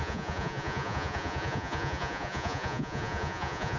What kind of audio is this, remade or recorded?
remade